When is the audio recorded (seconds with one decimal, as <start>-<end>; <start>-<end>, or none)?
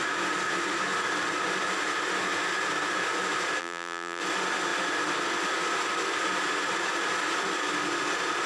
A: 0.0-3.6; 4.2-8.5